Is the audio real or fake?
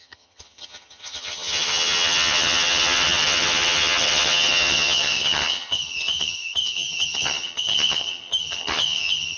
fake